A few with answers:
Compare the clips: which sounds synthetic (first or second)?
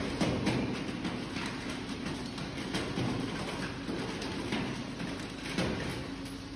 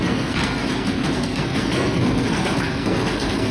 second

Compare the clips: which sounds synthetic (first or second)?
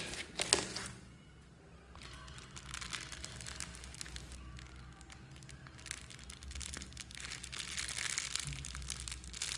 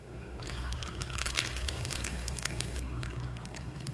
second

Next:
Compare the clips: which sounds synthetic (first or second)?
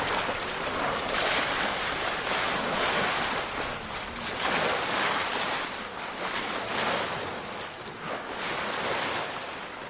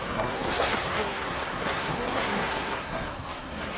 second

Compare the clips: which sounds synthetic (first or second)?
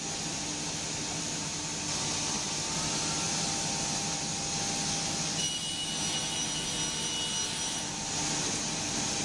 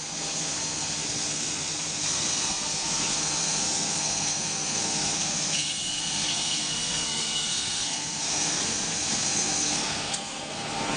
second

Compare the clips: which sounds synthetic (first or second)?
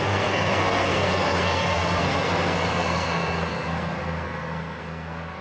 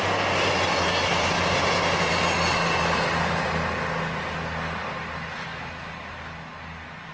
first